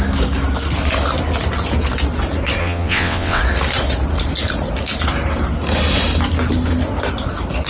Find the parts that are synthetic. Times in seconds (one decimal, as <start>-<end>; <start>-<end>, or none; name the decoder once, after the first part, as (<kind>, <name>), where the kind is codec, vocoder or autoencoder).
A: 2.6-3.4 (vocoder, WaveNeXt)